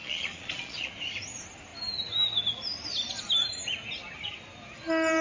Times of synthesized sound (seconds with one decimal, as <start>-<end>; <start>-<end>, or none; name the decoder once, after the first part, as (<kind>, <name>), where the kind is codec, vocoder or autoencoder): 0.0-0.9 (vocoder, Vocos)